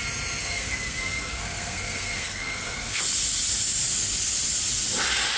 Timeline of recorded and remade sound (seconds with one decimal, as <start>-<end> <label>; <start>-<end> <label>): 0.0-0.4 recorded; 0.4-3.0 remade; 3.0-5.4 recorded